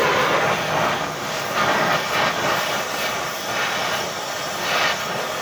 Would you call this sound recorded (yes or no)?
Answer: no